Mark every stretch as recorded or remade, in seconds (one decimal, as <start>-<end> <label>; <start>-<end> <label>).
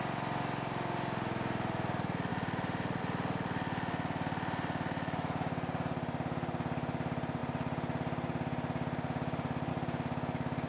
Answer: 0.0-2.3 recorded; 2.3-3.0 remade; 3.0-10.7 recorded